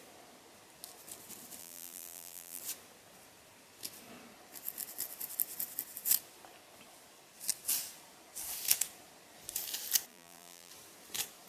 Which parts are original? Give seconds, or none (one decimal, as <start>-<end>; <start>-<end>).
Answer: 0.0-1.6; 2.6-10.1; 10.7-11.5